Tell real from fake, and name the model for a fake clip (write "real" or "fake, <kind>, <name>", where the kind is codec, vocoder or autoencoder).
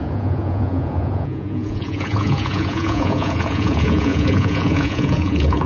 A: fake, vocoder, Vocos